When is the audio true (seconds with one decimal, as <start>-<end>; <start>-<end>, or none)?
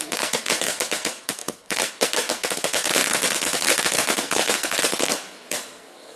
none